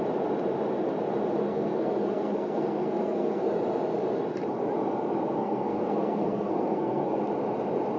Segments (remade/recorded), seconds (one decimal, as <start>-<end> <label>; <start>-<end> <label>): 0.0-1.4 recorded; 1.4-3.5 remade; 3.5-5.4 recorded; 5.4-7.2 remade; 7.2-8.0 recorded